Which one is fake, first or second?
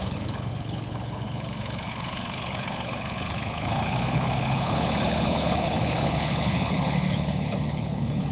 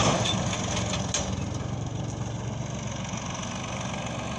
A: first